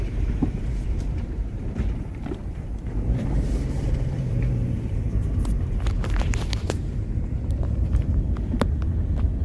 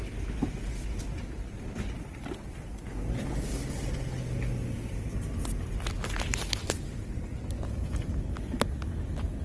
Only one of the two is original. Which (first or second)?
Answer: second